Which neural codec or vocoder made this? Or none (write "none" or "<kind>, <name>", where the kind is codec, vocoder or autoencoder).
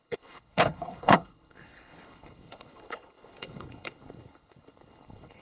codec, HILCodec